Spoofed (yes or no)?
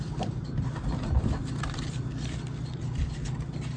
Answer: yes